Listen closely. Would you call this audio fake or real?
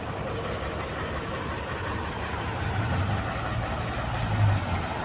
real